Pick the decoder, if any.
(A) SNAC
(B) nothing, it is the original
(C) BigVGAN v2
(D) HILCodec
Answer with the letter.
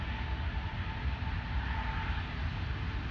B